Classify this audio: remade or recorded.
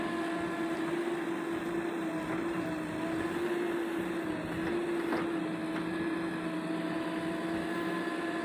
recorded